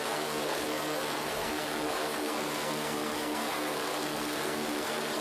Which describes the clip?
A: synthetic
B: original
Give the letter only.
A